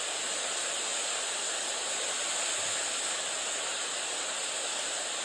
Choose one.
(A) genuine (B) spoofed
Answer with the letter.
A